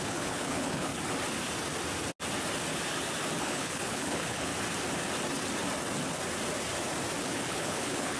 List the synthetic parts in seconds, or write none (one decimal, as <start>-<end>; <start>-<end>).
0.0-0.9; 3.4-4.5; 7.2-8.2